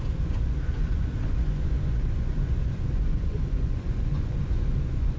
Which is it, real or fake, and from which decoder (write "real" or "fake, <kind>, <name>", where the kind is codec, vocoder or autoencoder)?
fake, vocoder, Vocos